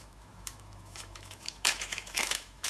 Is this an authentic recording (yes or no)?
no